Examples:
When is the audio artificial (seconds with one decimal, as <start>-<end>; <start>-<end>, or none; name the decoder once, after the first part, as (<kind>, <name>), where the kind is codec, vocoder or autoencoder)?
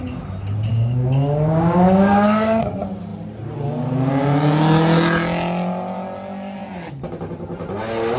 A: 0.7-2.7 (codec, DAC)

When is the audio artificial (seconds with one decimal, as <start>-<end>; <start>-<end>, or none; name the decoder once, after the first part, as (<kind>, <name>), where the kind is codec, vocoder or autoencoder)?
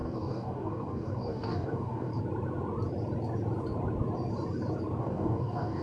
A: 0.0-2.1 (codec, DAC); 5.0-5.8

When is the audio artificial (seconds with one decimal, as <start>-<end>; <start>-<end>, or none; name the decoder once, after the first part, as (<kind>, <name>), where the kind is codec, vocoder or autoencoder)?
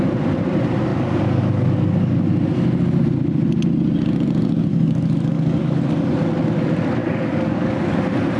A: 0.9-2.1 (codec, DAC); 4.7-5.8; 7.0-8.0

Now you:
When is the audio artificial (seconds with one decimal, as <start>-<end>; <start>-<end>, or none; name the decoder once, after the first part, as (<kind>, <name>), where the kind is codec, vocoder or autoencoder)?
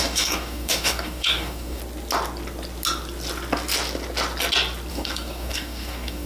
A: 0.0-1.8 (codec, DAC); 4.9-6.3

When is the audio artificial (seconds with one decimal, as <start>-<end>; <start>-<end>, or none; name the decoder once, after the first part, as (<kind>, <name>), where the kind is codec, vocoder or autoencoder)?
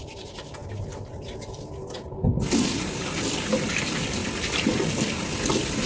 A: none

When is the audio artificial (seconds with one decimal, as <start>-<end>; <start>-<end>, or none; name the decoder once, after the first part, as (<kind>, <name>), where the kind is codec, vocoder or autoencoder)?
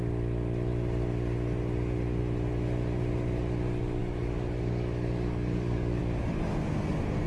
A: 4.0-6.0 (codec, DAC)